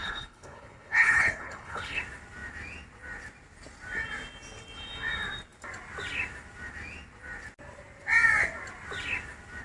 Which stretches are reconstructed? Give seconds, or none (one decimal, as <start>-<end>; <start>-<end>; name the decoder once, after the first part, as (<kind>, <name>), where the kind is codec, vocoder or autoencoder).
0.0-2.0 (codec, HILCodec)